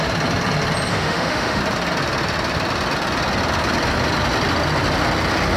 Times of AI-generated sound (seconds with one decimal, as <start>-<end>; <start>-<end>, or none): 0.9-1.6